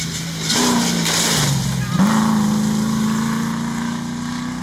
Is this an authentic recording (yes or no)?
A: yes